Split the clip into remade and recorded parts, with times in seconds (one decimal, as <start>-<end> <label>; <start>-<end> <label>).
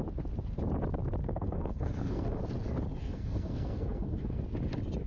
0.0-1.2 recorded; 1.2-2.4 remade; 2.4-3.0 recorded; 3.0-4.4 remade; 4.4-5.1 recorded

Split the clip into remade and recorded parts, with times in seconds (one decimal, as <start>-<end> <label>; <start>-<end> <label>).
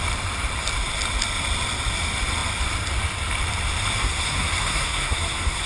0.0-4.0 recorded; 4.0-5.7 remade